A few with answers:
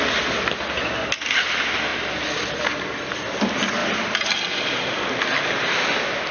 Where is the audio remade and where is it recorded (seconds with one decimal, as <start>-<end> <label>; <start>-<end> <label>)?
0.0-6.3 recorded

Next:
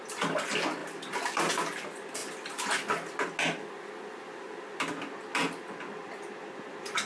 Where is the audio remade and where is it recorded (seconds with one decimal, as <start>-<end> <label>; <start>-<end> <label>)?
0.0-7.0 recorded

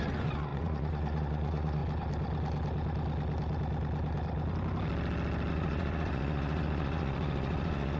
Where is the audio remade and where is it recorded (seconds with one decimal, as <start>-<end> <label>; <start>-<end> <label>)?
0.0-1.8 remade; 1.8-5.5 recorded; 5.5-8.0 remade

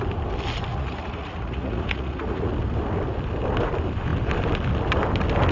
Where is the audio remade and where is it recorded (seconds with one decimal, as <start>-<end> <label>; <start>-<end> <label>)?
0.0-0.7 recorded; 0.7-2.5 remade; 2.5-5.5 recorded

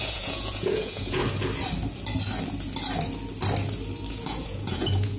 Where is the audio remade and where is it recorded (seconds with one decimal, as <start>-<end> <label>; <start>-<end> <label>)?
0.0-1.2 remade; 1.2-4.1 recorded; 4.1-5.2 remade